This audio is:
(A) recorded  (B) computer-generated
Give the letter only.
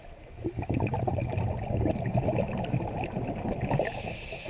A